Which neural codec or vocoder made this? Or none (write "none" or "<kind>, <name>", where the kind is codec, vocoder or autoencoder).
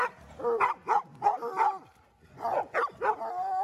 none